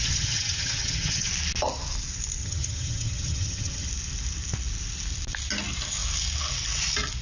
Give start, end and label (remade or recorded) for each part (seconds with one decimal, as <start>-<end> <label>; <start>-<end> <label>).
0.0-1.3 remade; 1.3-2.4 recorded; 2.4-3.9 remade; 3.9-7.2 recorded